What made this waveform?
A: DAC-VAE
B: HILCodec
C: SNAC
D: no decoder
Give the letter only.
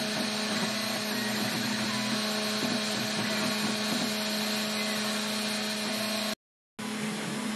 D